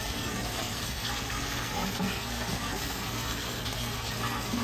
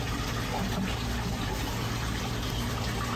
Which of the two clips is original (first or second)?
second